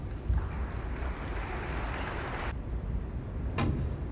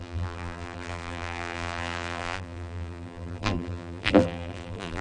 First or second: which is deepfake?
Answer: second